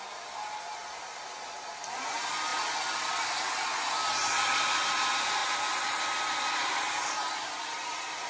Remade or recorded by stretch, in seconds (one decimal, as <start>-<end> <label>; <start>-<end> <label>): 0.0-8.3 recorded